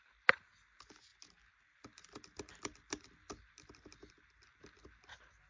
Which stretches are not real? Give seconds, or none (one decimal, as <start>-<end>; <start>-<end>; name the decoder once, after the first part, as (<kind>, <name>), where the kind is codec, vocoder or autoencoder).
none